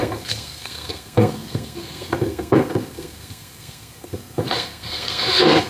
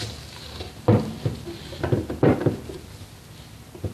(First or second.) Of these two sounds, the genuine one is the second